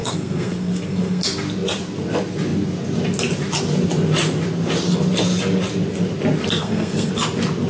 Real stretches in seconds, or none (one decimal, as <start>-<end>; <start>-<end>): 1.2-6.6; 7.1-7.7